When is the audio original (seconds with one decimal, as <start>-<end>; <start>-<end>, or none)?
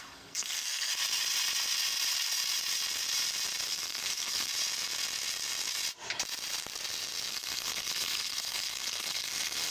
0.9-3.7; 4.5-7.3